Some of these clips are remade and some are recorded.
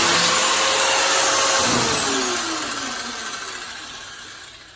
recorded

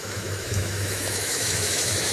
remade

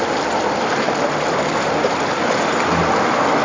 recorded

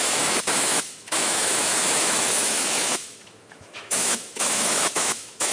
remade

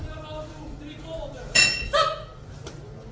recorded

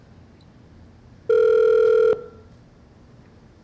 recorded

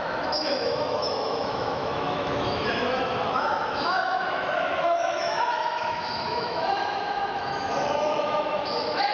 remade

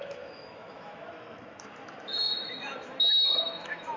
remade